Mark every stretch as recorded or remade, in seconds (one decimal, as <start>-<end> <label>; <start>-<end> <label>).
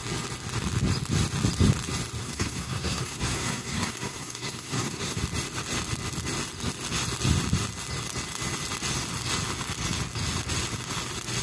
0.0-2.2 recorded; 2.2-5.2 remade; 5.2-11.4 recorded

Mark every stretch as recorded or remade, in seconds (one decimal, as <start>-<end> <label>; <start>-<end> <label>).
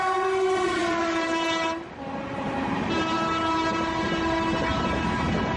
0.0-5.6 remade